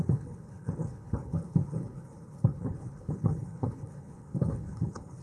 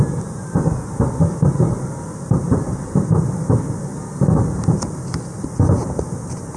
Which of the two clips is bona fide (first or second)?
second